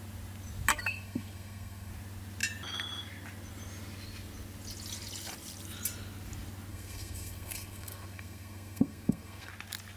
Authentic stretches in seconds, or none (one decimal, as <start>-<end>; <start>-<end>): 0.0-0.7; 1.9-6.7; 9.5-10.0